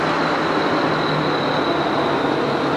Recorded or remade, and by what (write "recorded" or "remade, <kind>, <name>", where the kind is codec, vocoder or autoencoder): recorded